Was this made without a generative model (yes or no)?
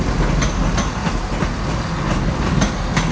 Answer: yes